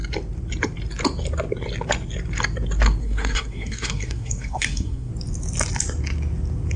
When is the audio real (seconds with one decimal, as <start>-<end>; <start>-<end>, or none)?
0.0-3.0; 5.1-6.8